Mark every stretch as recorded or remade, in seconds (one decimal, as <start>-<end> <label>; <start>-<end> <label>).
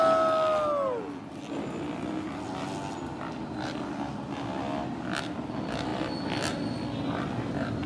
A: 0.0-7.9 recorded